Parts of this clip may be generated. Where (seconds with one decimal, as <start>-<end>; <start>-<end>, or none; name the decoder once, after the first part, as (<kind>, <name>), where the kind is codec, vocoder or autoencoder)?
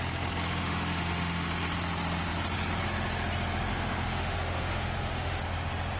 0.6-1.5 (autoencoder, DAC-VAE); 3.7-5.4